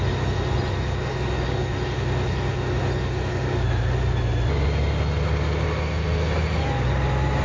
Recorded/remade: recorded